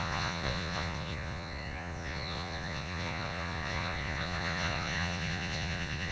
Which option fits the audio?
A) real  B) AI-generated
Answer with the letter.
B